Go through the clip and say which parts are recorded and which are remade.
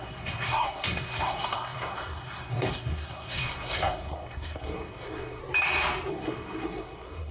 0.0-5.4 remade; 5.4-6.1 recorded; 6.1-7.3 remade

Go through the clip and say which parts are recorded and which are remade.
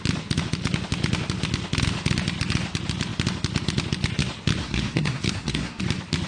0.0-4.6 recorded; 4.6-5.8 remade; 5.8-6.3 recorded